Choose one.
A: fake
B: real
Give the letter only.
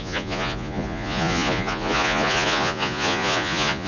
A